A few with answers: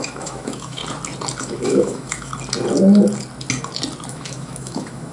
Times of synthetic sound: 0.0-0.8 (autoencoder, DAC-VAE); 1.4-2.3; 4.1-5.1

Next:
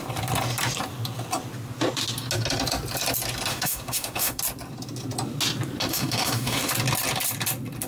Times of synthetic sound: 3.5-4.4 (autoencoder, DAC-VAE); 5.9-6.7

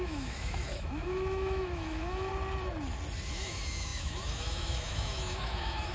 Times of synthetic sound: 0.0-2.3 (autoencoder, DAC-VAE); 3.3-5.9

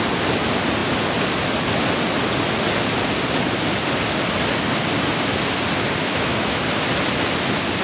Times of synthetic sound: 6.0-6.6 (autoencoder, DAC-VAE)

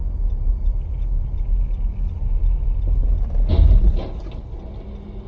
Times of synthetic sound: none

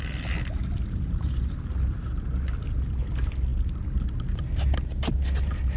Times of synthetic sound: none

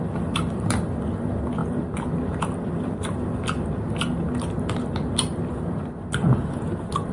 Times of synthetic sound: none

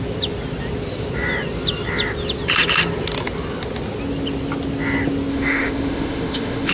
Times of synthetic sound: 5.3-6.7 (autoencoder, DAC-VAE)